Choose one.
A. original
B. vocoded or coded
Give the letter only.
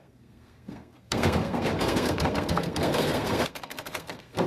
B